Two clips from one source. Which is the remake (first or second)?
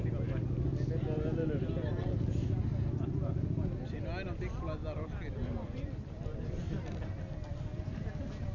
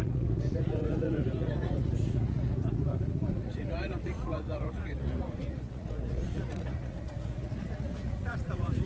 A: second